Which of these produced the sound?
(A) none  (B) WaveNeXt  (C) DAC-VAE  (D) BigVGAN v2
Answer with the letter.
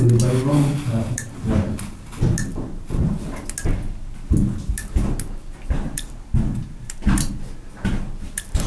A